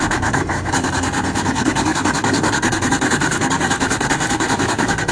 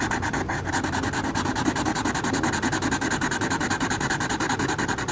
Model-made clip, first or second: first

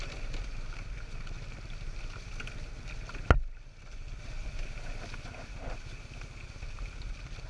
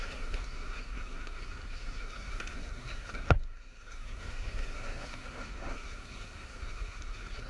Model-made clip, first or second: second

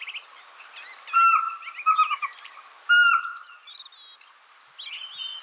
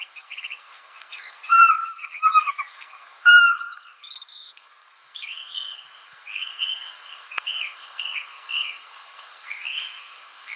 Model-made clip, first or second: second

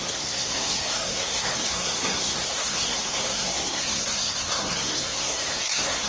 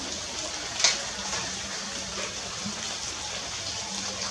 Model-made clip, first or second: first